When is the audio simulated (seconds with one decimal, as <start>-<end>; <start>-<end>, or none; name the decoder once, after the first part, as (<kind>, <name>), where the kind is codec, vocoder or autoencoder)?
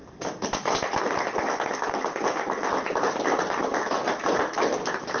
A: 3.7-4.8 (vocoder, BigVGAN v2)